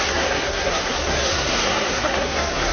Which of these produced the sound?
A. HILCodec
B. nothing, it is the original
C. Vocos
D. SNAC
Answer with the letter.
D